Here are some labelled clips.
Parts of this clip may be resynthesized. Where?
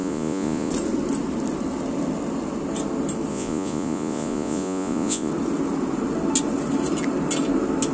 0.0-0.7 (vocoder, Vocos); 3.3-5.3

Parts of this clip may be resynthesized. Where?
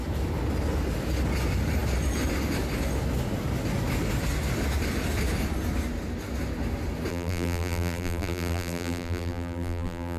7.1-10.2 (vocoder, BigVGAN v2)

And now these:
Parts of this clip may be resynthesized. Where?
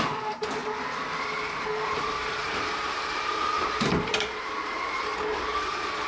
0.0-5.1 (vocoder, BigVGAN v2)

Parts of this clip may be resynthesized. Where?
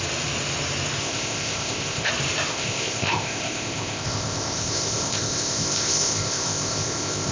1.0-2.1 (codec, ZipCodec); 2.5-7.3